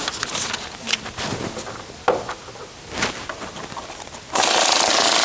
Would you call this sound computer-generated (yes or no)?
no